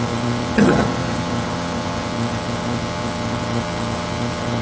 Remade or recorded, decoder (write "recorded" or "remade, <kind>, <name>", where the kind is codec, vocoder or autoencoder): remade, vocoder, HiFi-GAN